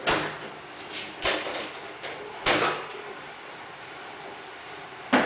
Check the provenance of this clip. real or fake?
real